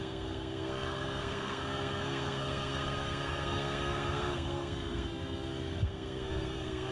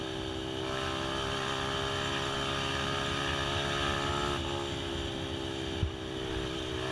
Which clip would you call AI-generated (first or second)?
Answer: first